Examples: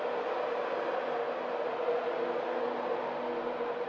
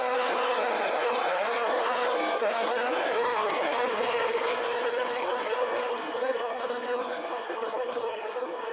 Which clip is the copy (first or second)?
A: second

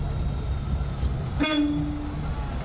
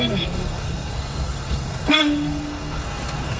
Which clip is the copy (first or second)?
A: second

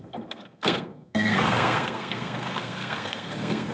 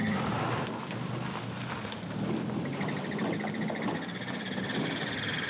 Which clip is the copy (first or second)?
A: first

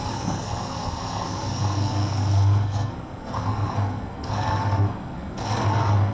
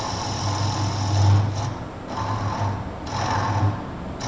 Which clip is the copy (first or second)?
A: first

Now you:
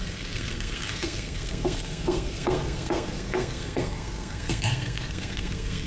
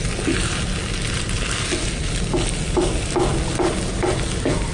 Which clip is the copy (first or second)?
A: first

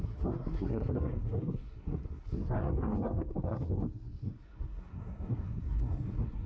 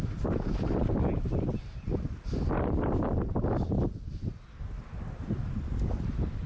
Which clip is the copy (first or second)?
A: first